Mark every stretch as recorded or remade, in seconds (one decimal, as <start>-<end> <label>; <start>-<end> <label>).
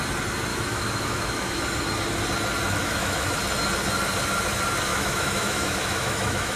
0.0-0.5 recorded; 0.5-1.6 remade; 1.6-2.8 recorded; 2.8-3.4 remade; 3.4-4.9 recorded; 4.9-6.6 remade